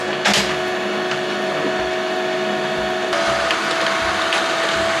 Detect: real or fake real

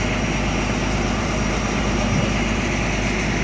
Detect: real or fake real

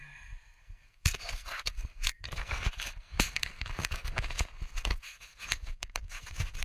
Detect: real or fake fake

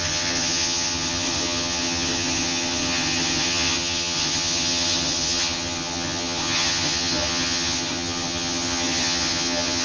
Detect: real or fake fake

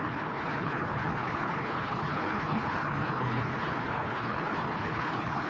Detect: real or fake fake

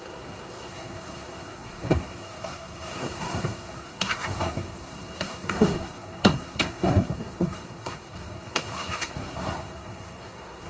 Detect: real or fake fake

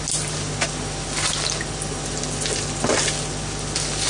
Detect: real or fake real